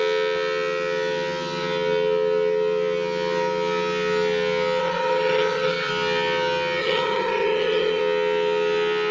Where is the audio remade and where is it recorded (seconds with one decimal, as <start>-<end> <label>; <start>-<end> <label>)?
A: 0.0-4.8 recorded; 4.8-5.9 remade; 5.9-6.8 recorded; 6.8-8.0 remade; 8.0-9.1 recorded